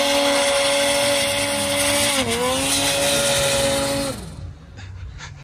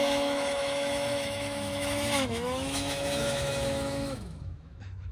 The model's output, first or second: second